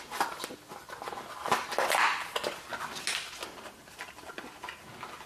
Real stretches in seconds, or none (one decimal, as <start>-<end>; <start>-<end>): 0.0-5.3